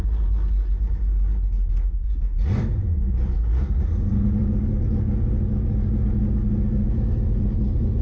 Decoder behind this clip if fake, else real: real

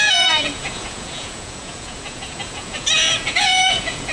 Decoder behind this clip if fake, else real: fake, vocoder, Vocos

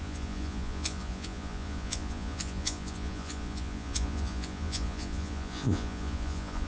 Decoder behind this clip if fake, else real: fake, vocoder, Vocos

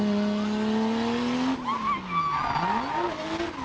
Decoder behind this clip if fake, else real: real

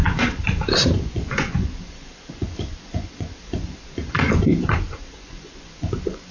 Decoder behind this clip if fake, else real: fake, vocoder, Vocos